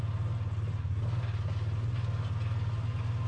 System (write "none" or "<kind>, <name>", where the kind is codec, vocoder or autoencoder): none